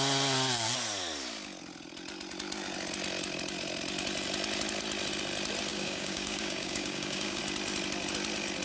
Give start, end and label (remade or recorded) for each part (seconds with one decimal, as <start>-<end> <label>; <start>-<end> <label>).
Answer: 0.0-5.7 recorded; 5.7-7.4 remade; 7.4-8.6 recorded